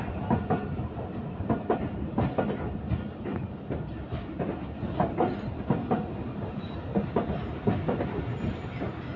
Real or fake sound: real